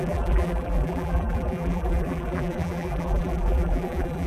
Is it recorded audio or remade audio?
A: remade